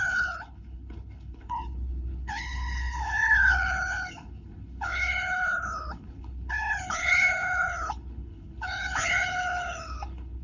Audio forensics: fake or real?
fake